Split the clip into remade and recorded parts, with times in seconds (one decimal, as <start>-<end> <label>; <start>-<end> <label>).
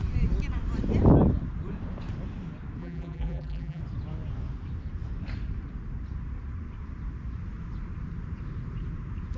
0.0-2.8 recorded; 2.8-3.8 remade; 3.8-9.4 recorded